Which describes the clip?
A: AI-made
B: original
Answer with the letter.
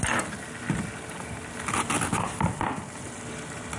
B